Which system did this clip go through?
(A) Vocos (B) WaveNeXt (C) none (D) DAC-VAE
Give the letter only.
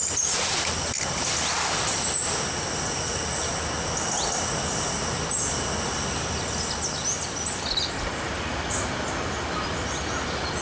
C